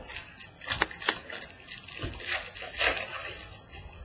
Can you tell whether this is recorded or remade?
recorded